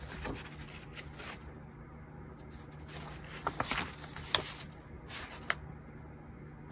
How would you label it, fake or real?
real